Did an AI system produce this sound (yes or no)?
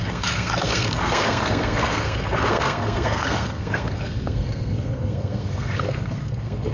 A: yes